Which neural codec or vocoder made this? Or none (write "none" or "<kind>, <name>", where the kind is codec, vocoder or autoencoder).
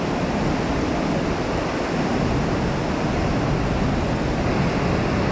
none